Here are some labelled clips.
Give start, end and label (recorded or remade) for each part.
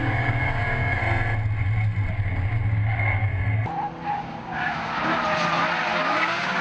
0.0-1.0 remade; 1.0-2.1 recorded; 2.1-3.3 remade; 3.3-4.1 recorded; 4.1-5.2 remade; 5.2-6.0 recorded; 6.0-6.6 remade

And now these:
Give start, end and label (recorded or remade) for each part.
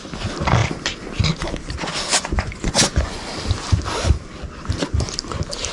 0.0-2.1 recorded; 2.1-3.3 remade; 3.3-5.7 recorded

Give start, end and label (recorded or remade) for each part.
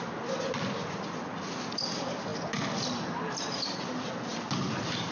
0.0-5.1 recorded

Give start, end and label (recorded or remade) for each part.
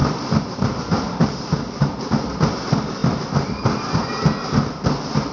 0.0-2.0 remade; 2.0-3.0 recorded; 3.0-3.9 remade; 3.9-5.3 recorded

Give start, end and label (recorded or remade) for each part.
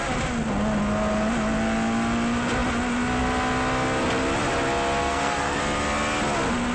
0.0-5.0 recorded; 5.0-5.6 remade; 5.6-6.7 recorded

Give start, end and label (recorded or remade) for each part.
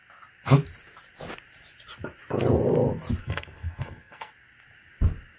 0.0-3.2 recorded; 3.2-4.3 remade; 4.3-5.4 recorded